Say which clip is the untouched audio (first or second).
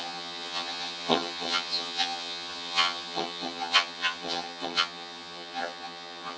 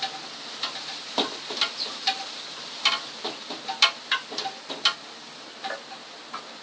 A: second